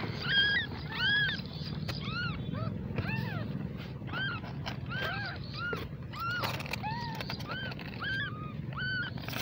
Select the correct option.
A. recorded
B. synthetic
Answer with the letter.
B